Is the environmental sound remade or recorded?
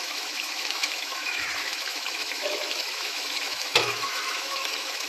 remade